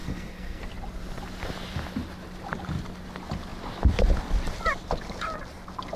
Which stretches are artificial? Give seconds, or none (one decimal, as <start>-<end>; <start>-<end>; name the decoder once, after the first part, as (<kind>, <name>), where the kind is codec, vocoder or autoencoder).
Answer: 0.0-0.6 (codec, SNAC)